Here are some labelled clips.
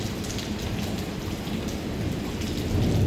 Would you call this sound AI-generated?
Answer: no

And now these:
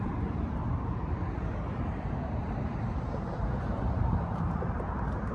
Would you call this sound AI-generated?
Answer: yes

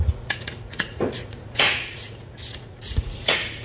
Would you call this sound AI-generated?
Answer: yes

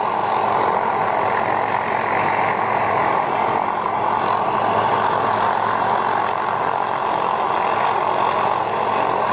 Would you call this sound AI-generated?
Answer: no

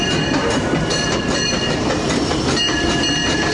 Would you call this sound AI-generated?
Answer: no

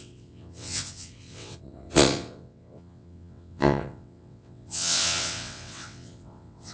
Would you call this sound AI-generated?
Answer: yes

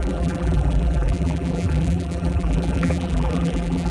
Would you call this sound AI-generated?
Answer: yes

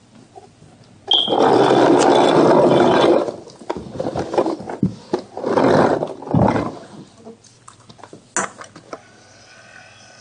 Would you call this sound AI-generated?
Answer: no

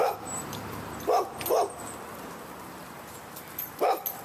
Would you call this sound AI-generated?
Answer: yes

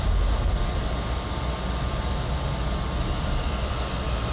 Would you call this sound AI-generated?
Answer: no